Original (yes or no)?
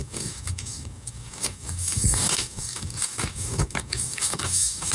no